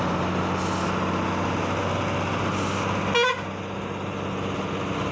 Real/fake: real